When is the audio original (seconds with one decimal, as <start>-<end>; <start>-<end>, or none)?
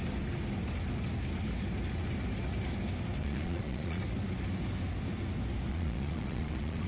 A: 0.0-3.2; 4.0-5.7